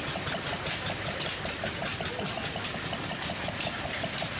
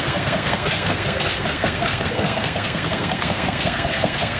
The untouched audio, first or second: first